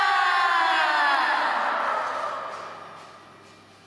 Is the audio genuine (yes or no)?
yes